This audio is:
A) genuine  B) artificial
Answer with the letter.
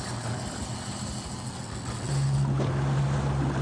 A